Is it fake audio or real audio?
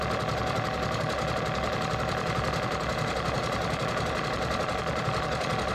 fake